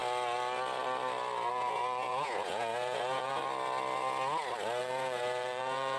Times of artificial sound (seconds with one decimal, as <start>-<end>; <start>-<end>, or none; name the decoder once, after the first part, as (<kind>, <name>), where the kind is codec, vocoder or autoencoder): 1.5-3.4 (vocoder, Vocos); 4.8-6.0